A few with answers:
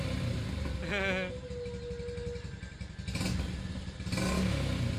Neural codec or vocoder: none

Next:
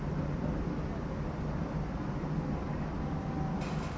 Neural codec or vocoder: none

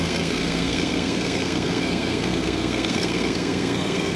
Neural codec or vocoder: codec, SNAC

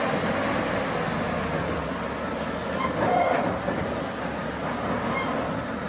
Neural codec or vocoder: none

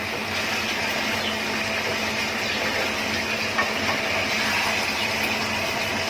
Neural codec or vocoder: none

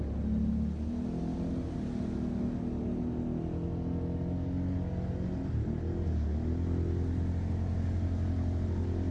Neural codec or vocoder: none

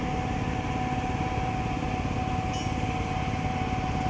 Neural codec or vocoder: none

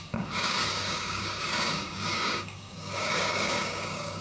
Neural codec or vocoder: codec, DAC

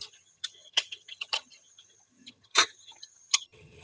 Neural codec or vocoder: vocoder, HiFi-GAN